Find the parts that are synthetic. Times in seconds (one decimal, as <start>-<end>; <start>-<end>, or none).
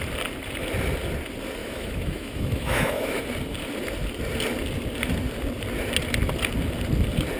1.6-3.2